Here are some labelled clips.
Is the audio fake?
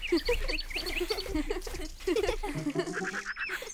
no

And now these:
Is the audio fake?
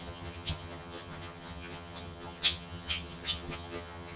yes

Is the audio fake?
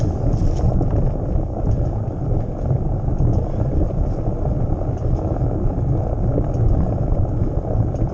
no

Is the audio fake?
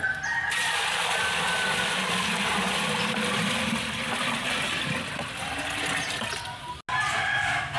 no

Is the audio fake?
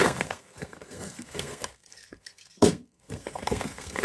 yes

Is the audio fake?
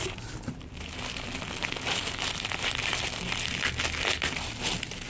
no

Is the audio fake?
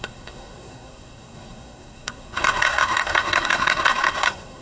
yes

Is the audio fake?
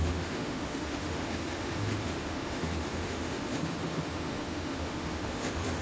yes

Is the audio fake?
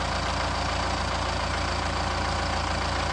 no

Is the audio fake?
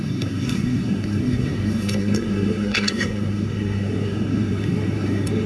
yes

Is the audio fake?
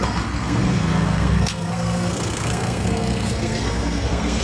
yes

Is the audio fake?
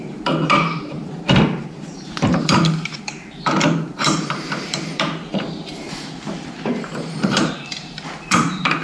yes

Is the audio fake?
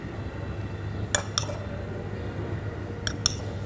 no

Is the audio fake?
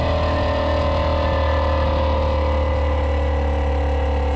no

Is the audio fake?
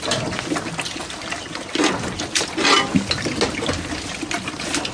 no